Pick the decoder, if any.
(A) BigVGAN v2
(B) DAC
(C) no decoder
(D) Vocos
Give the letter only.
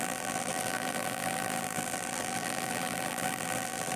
A